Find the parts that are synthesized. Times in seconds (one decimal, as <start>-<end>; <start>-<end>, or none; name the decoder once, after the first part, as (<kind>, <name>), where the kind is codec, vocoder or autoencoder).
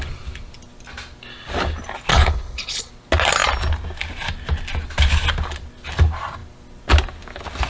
2.1-2.9 (codec, HILCodec)